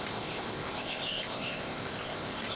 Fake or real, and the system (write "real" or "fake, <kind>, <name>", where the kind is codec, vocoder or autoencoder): fake, codec, ZipCodec